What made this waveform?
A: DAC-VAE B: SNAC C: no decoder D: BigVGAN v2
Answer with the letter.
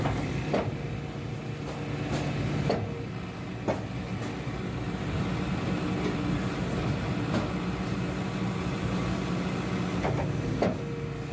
C